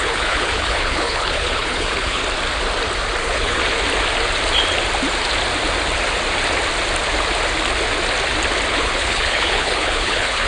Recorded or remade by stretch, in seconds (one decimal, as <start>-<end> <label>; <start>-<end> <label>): 0.0-2.2 remade; 2.2-3.2 recorded; 3.2-3.6 remade; 3.6-8.7 recorded; 8.7-10.5 remade